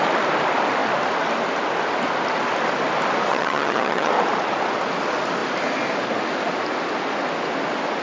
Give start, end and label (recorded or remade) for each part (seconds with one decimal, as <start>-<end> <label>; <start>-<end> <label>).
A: 0.0-3.3 recorded; 3.3-4.1 remade; 4.1-8.0 recorded